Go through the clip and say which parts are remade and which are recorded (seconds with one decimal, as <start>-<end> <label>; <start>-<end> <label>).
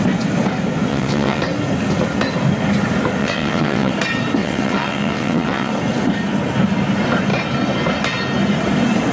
0.0-0.9 recorded; 0.9-1.4 remade; 1.4-3.2 recorded; 3.2-3.9 remade; 3.9-4.4 recorded; 4.4-5.7 remade; 5.7-9.1 recorded